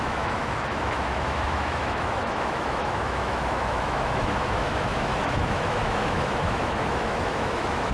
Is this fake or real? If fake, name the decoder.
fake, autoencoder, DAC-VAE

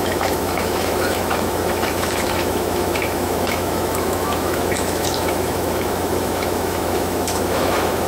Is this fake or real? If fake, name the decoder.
fake, autoencoder, DAC-VAE